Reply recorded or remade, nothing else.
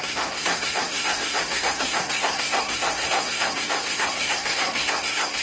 remade